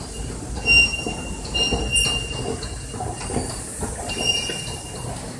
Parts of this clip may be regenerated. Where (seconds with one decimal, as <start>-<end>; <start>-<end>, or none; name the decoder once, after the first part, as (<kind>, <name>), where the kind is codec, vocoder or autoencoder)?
none